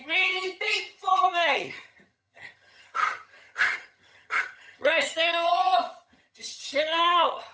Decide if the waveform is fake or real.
fake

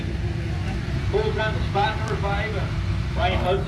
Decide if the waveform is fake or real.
real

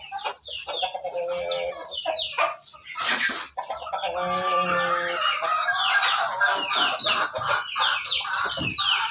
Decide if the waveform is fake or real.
real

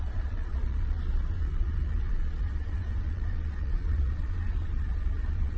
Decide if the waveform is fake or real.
fake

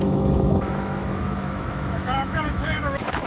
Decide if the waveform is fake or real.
fake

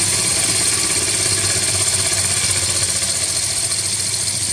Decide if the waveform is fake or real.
real